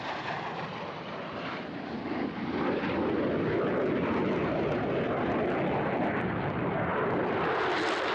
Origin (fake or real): real